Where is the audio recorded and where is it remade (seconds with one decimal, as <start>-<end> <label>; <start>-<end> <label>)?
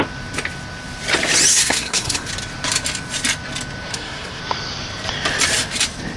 0.0-1.5 recorded; 1.5-2.3 remade; 2.3-3.9 recorded; 3.9-4.4 remade; 4.4-6.2 recorded